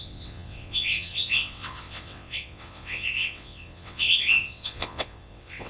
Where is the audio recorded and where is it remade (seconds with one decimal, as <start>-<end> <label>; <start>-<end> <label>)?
0.0-5.7 remade